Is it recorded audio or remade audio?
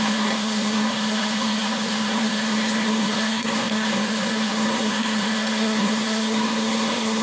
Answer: remade